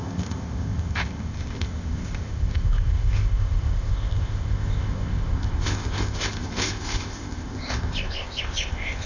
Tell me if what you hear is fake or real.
fake